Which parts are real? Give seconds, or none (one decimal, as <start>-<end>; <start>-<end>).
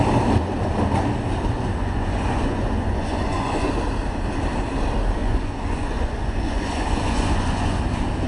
0.0-1.8; 3.7-5.2; 7.8-8.3